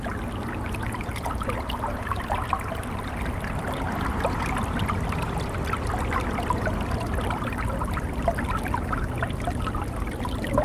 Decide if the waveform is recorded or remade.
recorded